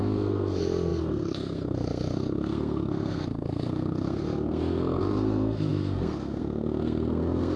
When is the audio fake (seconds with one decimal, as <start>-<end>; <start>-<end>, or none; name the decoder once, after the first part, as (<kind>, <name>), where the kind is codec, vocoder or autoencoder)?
0.0-7.6 (codec, SNAC)